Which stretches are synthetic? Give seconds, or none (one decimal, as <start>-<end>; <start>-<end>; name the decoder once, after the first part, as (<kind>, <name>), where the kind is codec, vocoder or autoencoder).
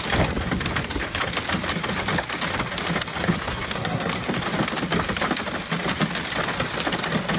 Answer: 3.3-4.1 (codec, SNAC)